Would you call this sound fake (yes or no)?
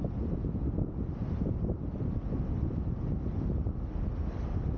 no